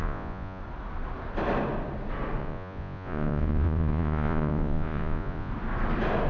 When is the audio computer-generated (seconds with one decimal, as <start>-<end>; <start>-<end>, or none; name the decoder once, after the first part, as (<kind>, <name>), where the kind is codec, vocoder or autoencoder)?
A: 0.0-0.6 (vocoder, Vocos); 2.4-5.5